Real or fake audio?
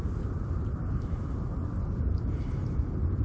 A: real